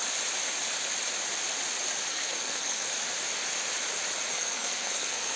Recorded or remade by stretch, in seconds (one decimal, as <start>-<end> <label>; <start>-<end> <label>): 0.0-2.1 recorded; 2.1-2.9 remade; 2.9-4.3 recorded; 4.3-5.4 remade